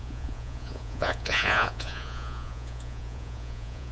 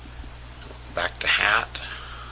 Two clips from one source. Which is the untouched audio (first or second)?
second